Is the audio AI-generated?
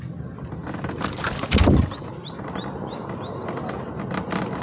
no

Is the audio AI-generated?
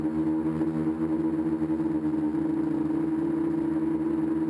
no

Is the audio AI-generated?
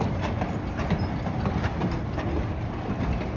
no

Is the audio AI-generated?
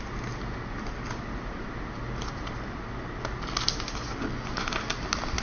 no